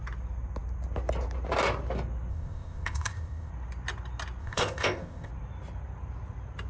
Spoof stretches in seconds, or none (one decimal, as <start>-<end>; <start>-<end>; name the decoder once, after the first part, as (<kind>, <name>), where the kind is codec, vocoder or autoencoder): 2.3-3.5 (codec, ZipCodec); 4.4-5.3